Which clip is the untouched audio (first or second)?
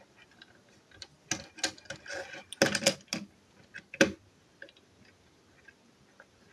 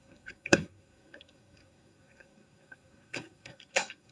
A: first